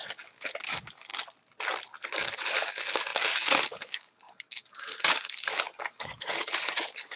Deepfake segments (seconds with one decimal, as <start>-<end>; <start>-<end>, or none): 0.0-1.1; 2.2-7.2